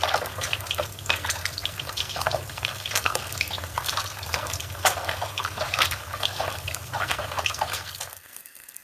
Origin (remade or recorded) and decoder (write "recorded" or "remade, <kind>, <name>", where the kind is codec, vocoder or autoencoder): remade, codec, SNAC